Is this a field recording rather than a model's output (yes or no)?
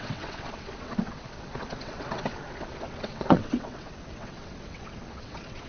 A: no